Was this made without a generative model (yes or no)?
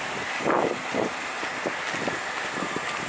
yes